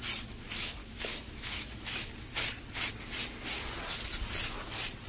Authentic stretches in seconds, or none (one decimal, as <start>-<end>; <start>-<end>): 0.0-0.8; 2.1-5.1